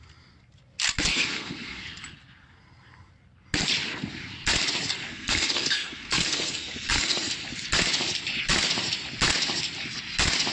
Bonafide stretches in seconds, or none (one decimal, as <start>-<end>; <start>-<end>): 0.0-1.1; 1.8-5.1; 7.3-10.5